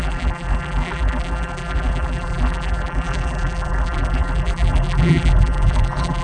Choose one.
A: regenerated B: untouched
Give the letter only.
A